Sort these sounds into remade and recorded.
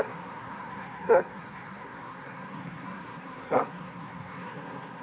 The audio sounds remade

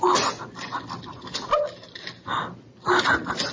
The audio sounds recorded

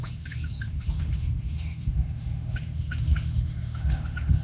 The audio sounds remade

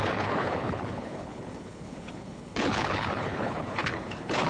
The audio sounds remade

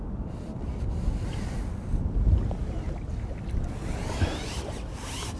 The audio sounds recorded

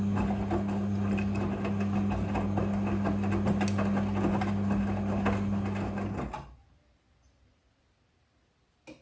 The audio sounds recorded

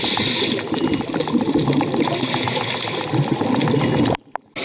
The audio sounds recorded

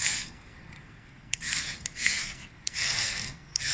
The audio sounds remade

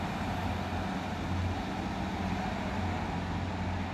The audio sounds recorded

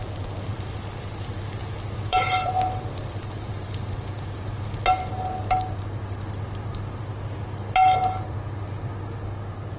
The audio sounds recorded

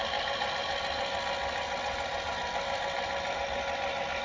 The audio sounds recorded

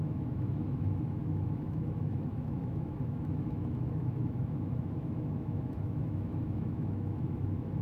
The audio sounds remade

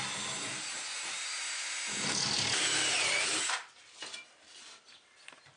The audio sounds recorded